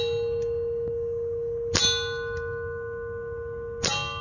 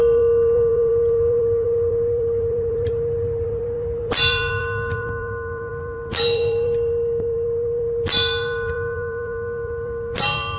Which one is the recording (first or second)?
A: first